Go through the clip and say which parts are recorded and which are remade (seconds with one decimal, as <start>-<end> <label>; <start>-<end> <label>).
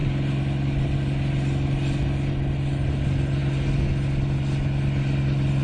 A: 0.0-5.6 recorded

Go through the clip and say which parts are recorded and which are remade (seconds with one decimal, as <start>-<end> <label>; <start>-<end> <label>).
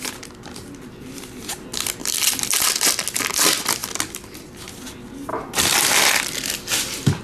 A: 0.0-2.0 recorded; 2.0-2.9 remade; 2.9-3.8 recorded; 3.8-4.7 remade; 4.7-5.3 recorded; 5.3-7.2 remade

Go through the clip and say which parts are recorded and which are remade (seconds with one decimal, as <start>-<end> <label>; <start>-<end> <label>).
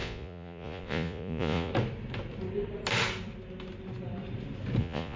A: 0.0-1.7 remade; 1.7-4.8 recorded; 4.8-5.2 remade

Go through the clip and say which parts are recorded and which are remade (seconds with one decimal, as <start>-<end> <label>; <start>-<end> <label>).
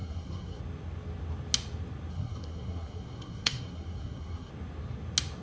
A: 0.0-0.6 remade; 0.6-2.1 recorded; 2.1-4.5 remade; 4.5-5.4 recorded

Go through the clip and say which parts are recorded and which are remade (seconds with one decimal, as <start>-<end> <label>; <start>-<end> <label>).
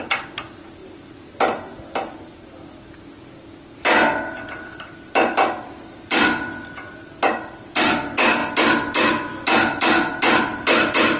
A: 0.0-0.8 remade; 0.8-4.2 recorded; 4.2-8.4 remade; 8.4-9.8 recorded; 9.8-11.2 remade